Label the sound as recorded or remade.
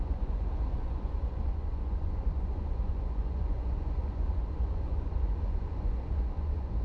remade